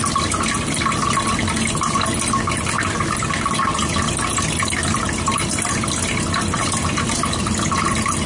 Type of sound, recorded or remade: recorded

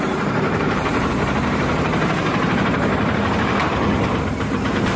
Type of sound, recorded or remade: remade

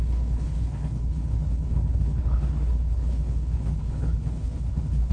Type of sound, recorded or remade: remade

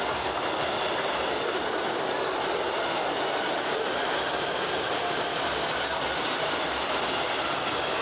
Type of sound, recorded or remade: recorded